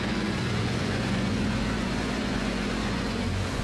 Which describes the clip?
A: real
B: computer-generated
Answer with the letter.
B